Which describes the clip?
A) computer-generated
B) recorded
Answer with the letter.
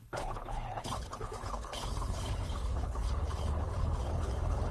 A